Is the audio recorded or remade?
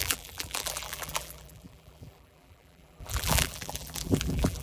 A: remade